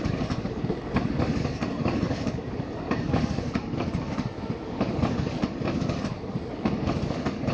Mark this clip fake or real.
fake